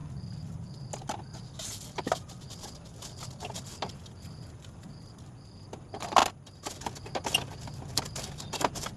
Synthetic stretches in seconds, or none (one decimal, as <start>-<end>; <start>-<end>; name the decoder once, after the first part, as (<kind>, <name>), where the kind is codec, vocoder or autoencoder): none